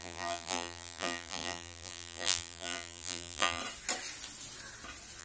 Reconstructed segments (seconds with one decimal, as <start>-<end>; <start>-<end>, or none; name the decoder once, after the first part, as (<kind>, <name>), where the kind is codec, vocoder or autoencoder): 0.0-3.6 (vocoder, BigVGAN v2)